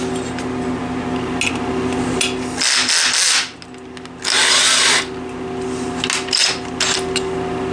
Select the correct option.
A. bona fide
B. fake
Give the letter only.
A